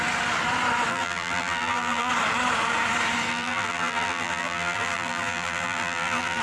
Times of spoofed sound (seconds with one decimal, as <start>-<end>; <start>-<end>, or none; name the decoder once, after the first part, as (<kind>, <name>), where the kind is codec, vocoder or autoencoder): 0.9-2.1 (vocoder, BigVGAN v2); 3.3-6.4